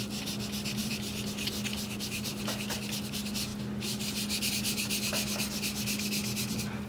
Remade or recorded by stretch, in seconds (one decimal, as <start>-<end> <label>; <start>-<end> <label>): 0.0-6.9 recorded